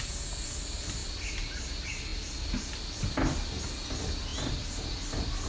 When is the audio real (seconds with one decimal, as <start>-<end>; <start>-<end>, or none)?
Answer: 0.0-5.5